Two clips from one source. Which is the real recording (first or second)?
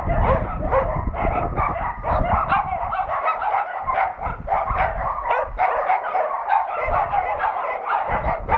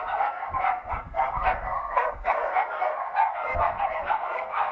first